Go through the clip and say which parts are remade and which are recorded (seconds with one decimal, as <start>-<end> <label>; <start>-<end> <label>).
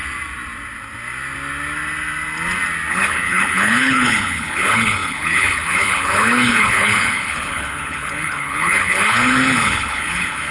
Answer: 0.0-2.9 recorded; 2.9-10.5 remade